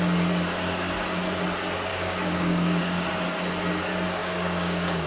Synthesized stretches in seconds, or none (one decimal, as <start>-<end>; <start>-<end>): 1.9-3.1; 4.2-5.1